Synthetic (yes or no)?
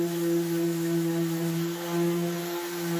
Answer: no